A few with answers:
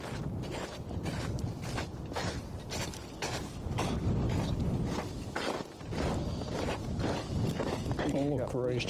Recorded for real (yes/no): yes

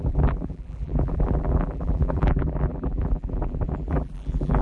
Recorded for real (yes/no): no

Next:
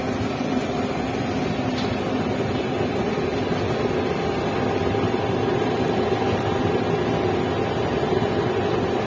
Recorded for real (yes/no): yes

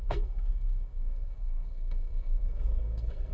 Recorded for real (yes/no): no